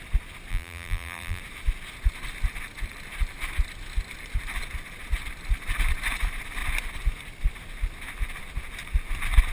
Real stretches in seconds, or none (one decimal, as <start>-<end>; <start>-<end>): 0.0-0.5; 1.4-9.5